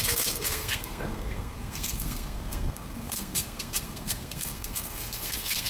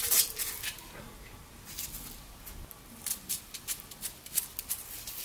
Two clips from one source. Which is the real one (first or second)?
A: second